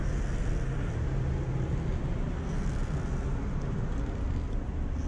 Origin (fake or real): real